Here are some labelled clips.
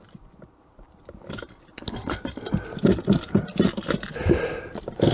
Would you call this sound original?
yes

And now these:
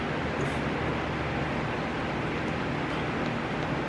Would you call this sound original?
yes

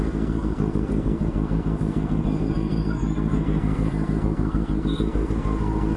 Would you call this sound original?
no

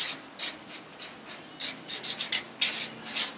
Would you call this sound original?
yes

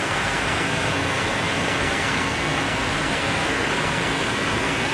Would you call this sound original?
no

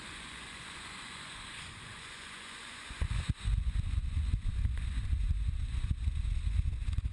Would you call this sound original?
no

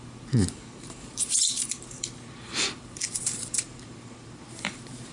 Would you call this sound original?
no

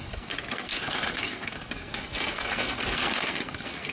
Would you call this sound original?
no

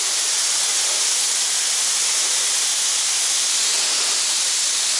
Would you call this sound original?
yes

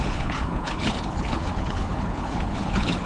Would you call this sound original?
no